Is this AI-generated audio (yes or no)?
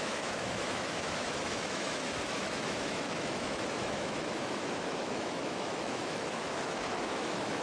yes